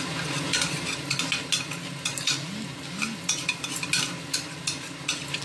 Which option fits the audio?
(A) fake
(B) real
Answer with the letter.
B